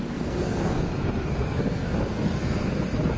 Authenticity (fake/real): fake